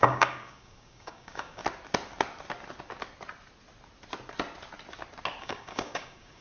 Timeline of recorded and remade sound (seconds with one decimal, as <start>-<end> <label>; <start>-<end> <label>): 0.0-1.6 remade; 1.6-5.4 recorded; 5.4-6.4 remade